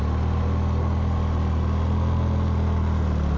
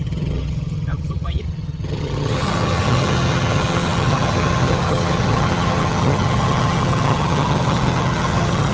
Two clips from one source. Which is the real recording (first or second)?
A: first